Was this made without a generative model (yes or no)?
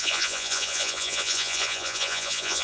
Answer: no